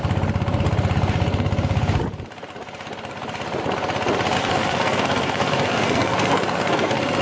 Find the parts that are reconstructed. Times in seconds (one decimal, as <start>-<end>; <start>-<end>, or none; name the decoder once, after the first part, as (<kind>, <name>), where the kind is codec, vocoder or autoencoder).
4.4-7.2 (codec, SNAC)